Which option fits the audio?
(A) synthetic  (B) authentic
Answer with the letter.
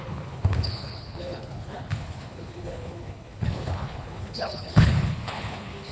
A